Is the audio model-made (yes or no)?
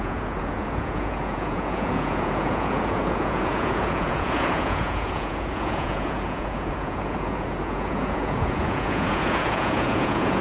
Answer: yes